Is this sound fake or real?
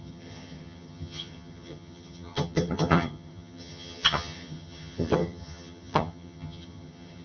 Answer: fake